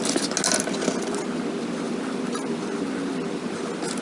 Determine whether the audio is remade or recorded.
recorded